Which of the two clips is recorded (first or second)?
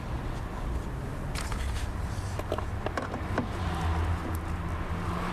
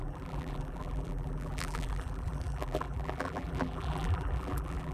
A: first